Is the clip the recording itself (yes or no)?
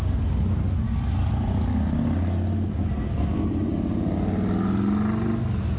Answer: yes